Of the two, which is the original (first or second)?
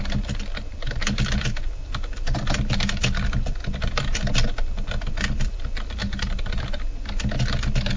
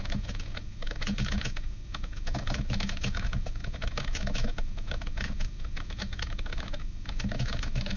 first